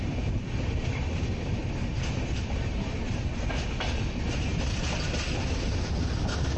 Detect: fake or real real